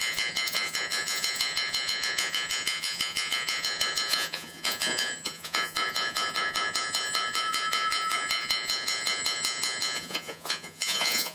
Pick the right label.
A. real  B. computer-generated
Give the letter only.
B